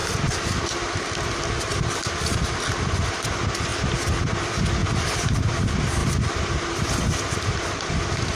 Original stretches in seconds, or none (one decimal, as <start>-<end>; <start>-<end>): 0.0-3.7; 4.2-6.0; 6.8-8.4